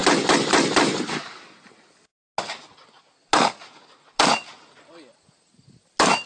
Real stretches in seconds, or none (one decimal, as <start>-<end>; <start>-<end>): 0.0-6.3